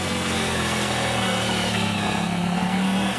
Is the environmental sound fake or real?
fake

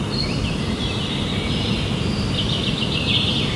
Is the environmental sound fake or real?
real